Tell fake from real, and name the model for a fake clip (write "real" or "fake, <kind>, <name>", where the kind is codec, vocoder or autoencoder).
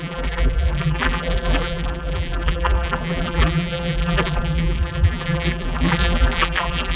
fake, vocoder, BigVGAN v2